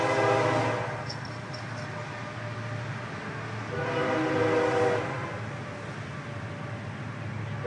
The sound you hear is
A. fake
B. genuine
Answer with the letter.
B